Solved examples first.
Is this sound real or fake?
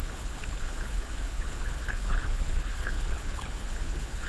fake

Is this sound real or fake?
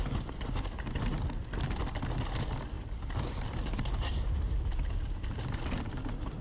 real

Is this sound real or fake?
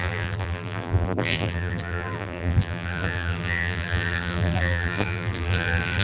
fake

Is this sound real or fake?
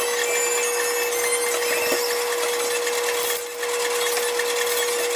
real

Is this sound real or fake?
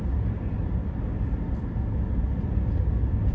real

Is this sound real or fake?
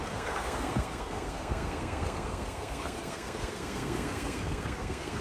fake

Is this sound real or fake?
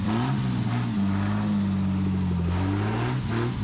real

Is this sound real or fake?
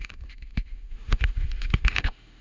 fake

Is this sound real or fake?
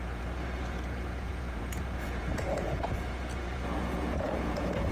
fake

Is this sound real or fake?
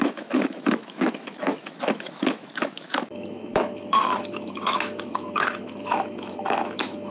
fake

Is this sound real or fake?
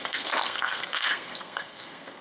fake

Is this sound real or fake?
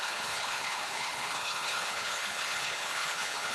fake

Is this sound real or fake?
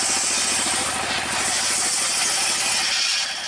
real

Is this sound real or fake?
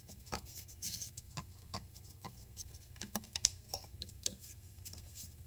fake